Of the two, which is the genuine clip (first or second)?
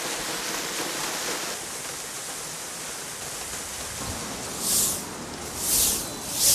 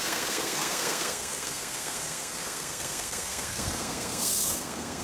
first